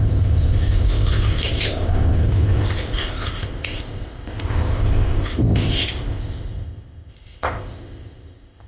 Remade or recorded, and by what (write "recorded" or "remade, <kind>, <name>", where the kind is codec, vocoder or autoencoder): remade, codec, ZipCodec